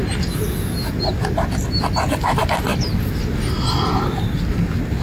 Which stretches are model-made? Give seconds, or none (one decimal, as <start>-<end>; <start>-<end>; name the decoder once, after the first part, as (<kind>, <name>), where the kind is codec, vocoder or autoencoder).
none